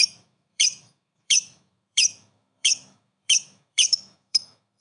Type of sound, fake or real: fake